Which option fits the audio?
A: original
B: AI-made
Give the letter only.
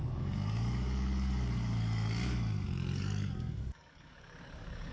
B